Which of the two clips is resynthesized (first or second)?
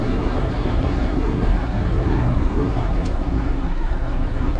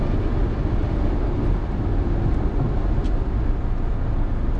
first